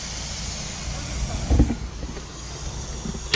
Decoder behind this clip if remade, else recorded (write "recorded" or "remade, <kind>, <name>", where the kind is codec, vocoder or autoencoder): recorded